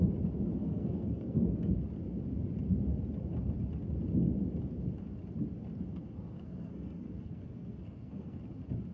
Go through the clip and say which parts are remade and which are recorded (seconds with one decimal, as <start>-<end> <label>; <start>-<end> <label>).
0.0-0.5 recorded; 0.5-1.7 remade; 1.7-5.9 recorded; 5.9-8.4 remade; 8.4-8.9 recorded